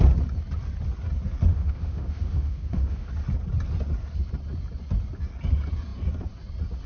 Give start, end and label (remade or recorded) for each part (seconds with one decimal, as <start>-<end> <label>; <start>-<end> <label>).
0.0-1.5 recorded; 1.5-3.1 remade; 3.1-6.9 recorded